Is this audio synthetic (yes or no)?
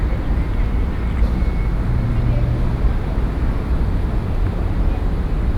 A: no